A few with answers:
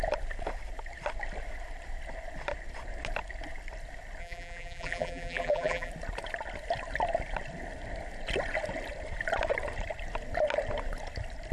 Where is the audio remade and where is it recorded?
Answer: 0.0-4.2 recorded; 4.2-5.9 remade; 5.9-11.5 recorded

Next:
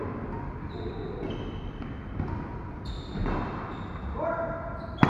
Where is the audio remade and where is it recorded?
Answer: 0.0-2.5 remade; 2.5-5.1 recorded

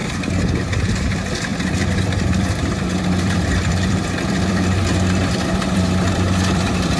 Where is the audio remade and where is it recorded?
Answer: 0.0-0.6 recorded; 0.6-7.0 remade

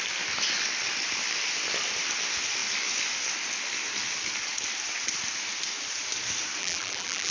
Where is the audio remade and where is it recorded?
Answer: 0.0-6.6 recorded; 6.6-7.3 remade

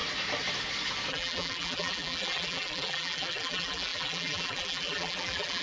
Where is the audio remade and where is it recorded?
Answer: 0.0-1.1 recorded; 1.1-5.6 remade